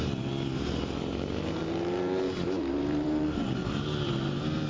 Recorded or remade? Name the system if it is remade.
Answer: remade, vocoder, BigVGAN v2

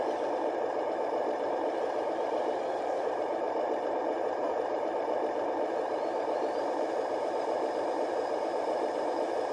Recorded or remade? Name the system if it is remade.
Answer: remade, vocoder, BigVGAN v2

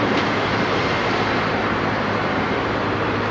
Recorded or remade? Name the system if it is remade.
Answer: remade, vocoder, BigVGAN v2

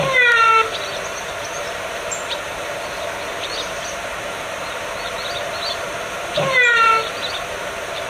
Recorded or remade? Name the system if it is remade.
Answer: remade, vocoder, BigVGAN v2